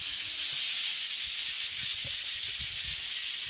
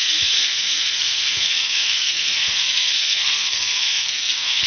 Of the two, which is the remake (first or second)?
second